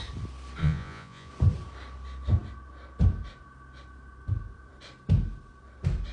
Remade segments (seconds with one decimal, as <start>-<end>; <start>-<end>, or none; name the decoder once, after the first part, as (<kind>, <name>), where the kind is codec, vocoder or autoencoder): 0.6-1.3 (vocoder, Vocos)